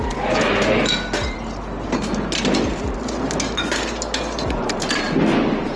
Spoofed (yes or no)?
no